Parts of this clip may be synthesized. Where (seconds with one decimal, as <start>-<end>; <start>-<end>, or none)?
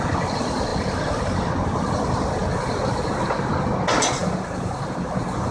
none